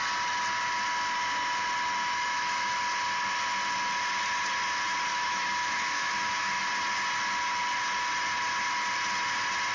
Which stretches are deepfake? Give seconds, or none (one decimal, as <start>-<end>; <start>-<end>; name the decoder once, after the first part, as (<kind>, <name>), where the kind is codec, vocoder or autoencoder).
2.0-2.7 (autoencoder, DAC-VAE); 5.1-6.6